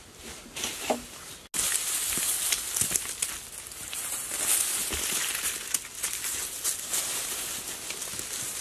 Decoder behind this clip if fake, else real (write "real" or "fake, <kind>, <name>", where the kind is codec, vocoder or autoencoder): real